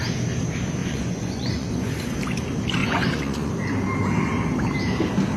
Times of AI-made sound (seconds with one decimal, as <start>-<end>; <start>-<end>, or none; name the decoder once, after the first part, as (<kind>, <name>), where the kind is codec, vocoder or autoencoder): 0.8-1.9 (vocoder, Vocos); 2.8-3.5